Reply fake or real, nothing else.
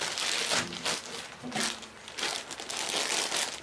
real